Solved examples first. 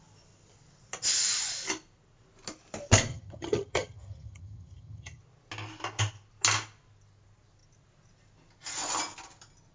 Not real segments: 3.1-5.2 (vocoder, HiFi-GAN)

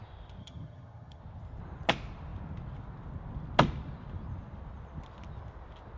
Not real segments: 0.4-1.2 (vocoder, HiFi-GAN)

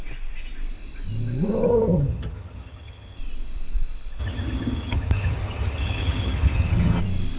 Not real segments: 1.7-3.2 (vocoder, HiFi-GAN); 4.2-7.0

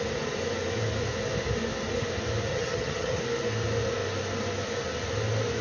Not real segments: 2.5-3.2 (vocoder, HiFi-GAN)

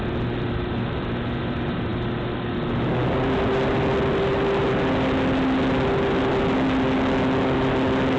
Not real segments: none